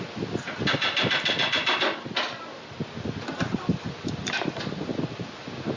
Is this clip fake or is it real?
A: real